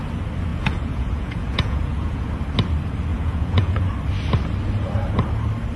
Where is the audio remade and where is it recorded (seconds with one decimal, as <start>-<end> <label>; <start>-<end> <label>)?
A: 0.0-0.5 recorded; 0.5-2.3 remade; 2.3-3.1 recorded; 3.1-3.8 remade; 3.8-5.8 recorded